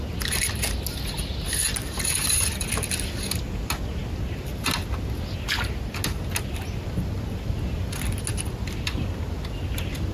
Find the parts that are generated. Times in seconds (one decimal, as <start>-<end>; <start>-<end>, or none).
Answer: none